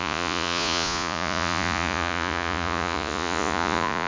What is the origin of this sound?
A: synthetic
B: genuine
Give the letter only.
A